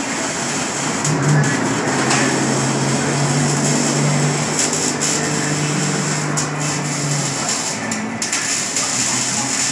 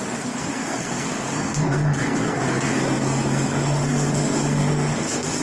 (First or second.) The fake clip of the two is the second